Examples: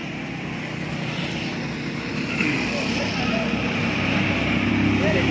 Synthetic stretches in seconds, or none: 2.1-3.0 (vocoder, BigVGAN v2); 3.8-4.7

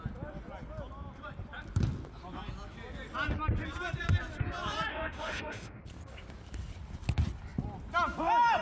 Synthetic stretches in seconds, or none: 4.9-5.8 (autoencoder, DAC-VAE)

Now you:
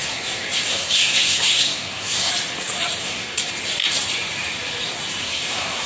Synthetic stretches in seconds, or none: 0.0-2.3 (codec, SNAC); 3.0-3.5; 5.2-5.9

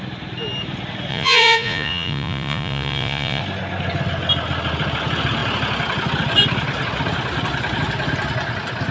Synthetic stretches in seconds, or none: 1.1-3.4 (vocoder, Vocos)

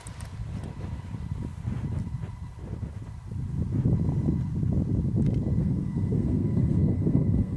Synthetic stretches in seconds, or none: 5.6-7.6 (codec, SNAC)